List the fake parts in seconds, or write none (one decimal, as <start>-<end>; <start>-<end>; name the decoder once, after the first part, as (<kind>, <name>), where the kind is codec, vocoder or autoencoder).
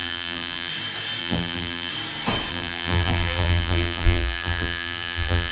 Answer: 0.0-0.7 (vocoder, BigVGAN v2); 1.2-1.9; 2.5-5.5